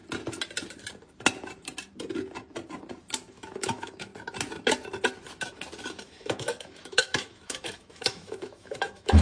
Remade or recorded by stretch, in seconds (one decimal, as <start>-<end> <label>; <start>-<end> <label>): 0.0-3.3 recorded; 3.3-4.1 remade; 4.1-5.9 recorded; 5.9-9.2 remade